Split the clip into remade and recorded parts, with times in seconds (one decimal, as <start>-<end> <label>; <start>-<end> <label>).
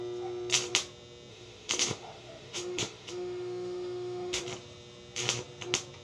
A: 0.0-1.3 recorded; 1.3-4.4 remade; 4.4-6.0 recorded